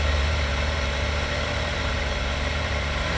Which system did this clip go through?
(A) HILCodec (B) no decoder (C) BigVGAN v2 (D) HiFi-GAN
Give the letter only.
C